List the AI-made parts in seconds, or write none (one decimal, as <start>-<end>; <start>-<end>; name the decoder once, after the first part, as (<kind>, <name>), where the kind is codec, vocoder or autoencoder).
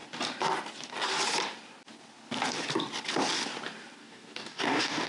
4.0-5.1 (codec, DAC)